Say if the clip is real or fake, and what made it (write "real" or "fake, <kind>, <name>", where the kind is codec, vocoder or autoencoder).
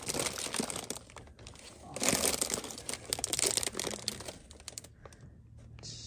real